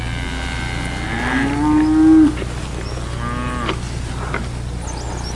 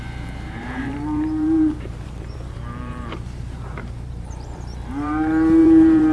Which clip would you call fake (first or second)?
second